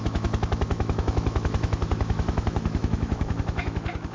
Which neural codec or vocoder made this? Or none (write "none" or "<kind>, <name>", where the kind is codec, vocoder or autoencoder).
autoencoder, DAC-VAE